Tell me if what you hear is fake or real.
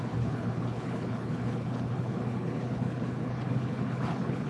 fake